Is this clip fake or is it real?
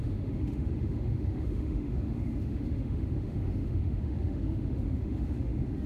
fake